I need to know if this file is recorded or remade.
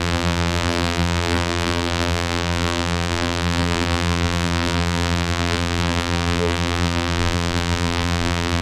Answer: remade